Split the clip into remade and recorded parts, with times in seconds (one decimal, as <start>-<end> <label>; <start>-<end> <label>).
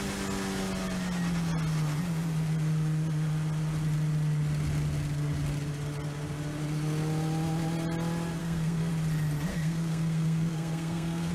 0.0-8.4 recorded; 8.4-8.9 remade; 8.9-9.5 recorded; 9.5-11.3 remade